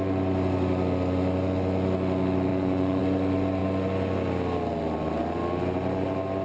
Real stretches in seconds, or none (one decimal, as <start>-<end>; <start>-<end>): 0.0-2.5; 3.0-6.4